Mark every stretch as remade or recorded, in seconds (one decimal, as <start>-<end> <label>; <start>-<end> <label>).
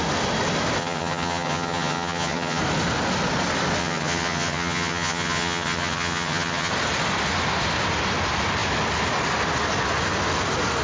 0.0-0.8 recorded; 0.8-2.6 remade; 2.6-3.8 recorded; 3.8-6.7 remade; 6.7-10.8 recorded